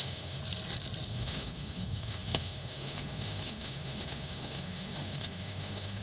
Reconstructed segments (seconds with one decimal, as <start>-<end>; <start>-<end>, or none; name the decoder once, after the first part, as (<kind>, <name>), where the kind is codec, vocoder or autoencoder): 0.0-0.4 (autoencoder, DAC-VAE); 1.1-6.0